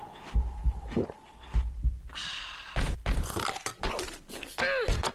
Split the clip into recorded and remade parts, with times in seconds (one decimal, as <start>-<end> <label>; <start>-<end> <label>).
0.0-5.1 recorded

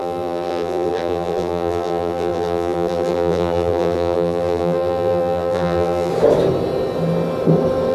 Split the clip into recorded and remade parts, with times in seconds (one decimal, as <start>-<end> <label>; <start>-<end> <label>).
0.0-6.1 remade; 6.1-7.9 recorded

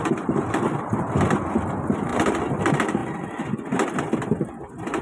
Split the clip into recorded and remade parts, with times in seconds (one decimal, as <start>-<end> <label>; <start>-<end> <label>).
0.0-5.0 recorded

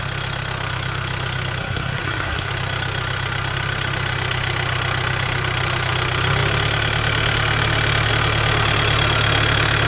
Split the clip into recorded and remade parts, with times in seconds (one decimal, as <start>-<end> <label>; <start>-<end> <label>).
0.0-1.6 recorded; 1.6-2.5 remade; 2.5-9.9 recorded

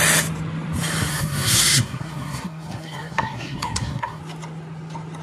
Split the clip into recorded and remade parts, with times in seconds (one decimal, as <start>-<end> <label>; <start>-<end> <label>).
0.0-1.1 recorded; 1.1-4.2 remade; 4.2-5.2 recorded

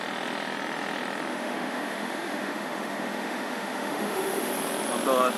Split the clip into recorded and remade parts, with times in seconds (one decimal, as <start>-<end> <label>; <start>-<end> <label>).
0.0-1.3 recorded; 1.3-4.5 remade; 4.5-5.4 recorded

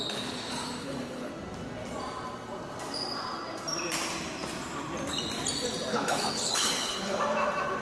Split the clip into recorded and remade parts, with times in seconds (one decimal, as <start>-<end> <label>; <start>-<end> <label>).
0.0-0.8 recorded; 0.8-1.3 remade; 1.3-5.9 recorded; 5.9-7.2 remade; 7.2-7.8 recorded

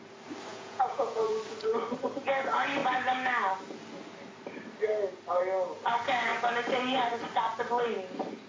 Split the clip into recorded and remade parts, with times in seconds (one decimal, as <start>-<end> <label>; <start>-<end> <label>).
0.0-0.5 recorded; 0.5-1.2 remade; 1.2-8.5 recorded